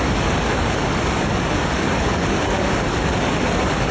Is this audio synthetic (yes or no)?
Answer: yes